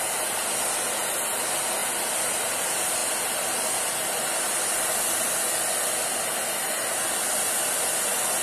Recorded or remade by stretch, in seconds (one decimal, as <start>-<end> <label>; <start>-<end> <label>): 0.0-8.4 recorded